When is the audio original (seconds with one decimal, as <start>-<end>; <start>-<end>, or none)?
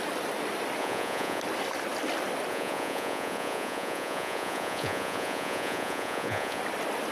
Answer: 0.0-0.8; 1.4-2.5; 6.6-7.1